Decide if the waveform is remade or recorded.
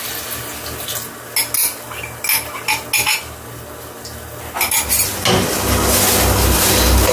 recorded